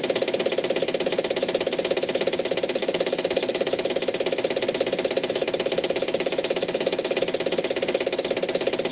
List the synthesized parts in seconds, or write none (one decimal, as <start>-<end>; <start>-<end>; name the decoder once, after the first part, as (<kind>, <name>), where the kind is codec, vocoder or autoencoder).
2.8-3.9 (autoencoder, DAC-VAE); 5.2-7.2